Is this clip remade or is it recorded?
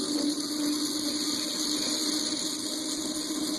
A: recorded